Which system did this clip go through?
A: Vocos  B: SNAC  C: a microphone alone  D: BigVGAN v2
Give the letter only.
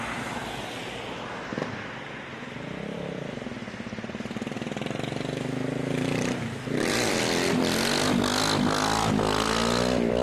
C